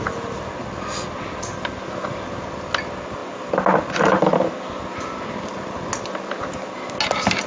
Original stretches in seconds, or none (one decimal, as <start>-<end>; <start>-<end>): 0.0-7.5